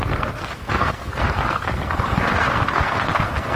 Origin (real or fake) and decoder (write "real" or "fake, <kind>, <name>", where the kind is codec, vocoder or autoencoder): fake, codec, SNAC